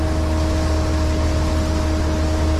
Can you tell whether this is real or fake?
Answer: real